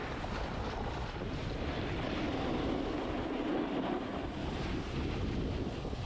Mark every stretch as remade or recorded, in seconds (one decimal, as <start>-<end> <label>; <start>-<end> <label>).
0.0-6.1 recorded